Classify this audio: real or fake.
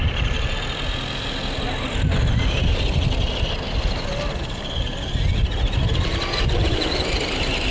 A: real